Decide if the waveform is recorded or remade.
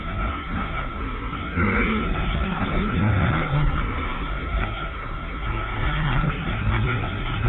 remade